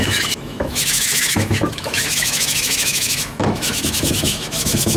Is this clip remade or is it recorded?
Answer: remade